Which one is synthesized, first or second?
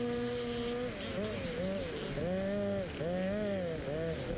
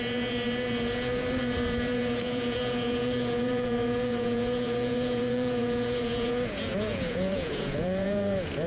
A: second